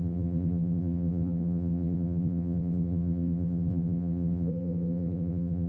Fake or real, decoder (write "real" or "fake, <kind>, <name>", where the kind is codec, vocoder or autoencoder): fake, vocoder, BigVGAN v2